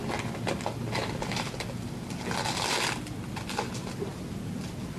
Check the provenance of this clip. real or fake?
real